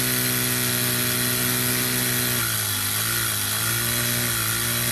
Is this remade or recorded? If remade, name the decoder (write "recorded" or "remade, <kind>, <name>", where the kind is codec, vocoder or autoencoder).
recorded